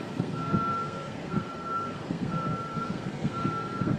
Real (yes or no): no